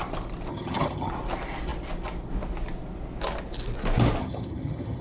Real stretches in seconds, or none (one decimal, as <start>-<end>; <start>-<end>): 0.0-0.5; 1.1-4.2